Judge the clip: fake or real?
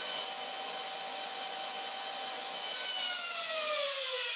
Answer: fake